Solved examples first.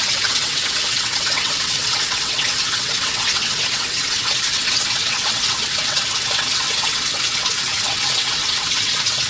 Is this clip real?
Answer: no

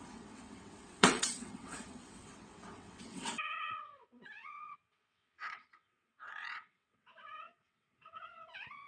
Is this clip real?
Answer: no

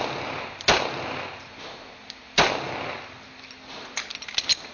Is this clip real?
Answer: yes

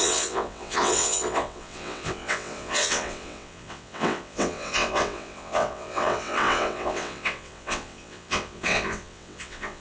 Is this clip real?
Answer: no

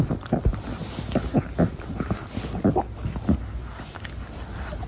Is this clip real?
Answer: yes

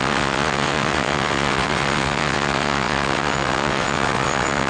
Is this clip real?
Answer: no